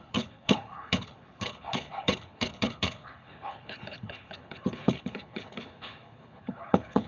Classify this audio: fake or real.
fake